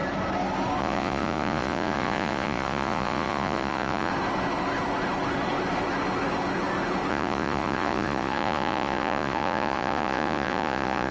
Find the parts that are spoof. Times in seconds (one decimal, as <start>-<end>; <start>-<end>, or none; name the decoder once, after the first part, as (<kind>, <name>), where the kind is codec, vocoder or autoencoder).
0.8-4.1 (vocoder, Vocos); 7.1-11.1